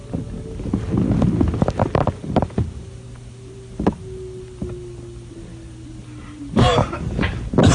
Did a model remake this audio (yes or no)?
no